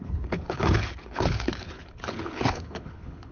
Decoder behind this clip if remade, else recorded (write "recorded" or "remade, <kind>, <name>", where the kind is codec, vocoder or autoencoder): remade, codec, HILCodec